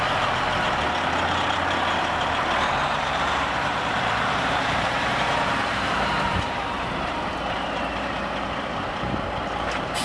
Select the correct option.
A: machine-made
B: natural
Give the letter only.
A